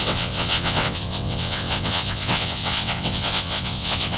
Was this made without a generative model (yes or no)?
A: no